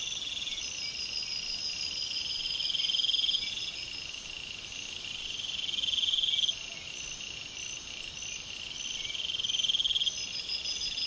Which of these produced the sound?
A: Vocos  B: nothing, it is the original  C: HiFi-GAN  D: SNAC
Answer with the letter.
B